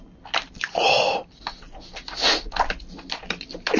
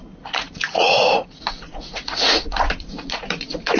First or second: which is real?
first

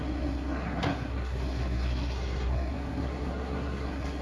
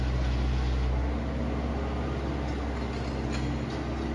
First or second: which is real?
second